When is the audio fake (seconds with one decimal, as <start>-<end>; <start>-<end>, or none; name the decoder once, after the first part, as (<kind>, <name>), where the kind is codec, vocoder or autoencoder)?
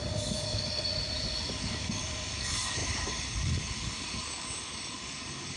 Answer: 0.0-0.9 (codec, DAC); 1.5-5.6